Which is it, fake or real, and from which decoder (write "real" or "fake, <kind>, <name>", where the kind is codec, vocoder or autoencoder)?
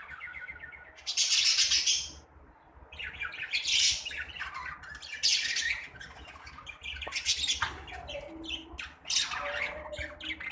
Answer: real